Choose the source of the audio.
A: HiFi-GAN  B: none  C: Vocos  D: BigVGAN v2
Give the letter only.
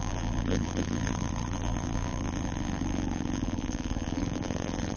D